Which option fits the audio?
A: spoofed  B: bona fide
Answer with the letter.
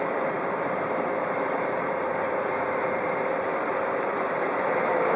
A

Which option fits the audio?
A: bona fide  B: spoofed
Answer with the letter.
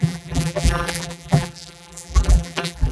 B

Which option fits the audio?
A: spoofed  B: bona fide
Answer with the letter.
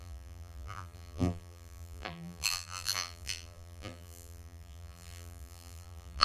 A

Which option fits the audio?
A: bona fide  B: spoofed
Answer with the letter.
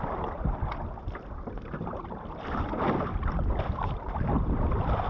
A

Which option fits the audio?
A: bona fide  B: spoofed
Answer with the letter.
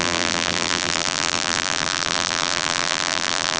B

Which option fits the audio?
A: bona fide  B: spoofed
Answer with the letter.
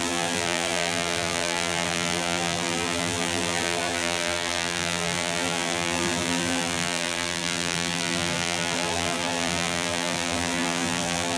B